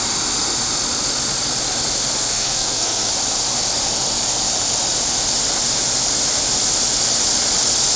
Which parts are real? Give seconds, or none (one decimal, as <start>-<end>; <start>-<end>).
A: 0.0-2.2; 3.1-8.0